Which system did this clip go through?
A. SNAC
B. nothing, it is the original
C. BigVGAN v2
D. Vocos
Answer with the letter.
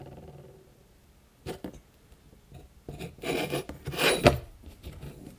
B